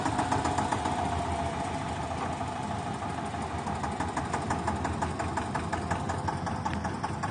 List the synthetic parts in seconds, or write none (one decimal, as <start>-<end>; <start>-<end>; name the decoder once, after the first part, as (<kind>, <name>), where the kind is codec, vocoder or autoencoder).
none